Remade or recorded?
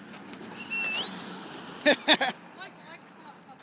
recorded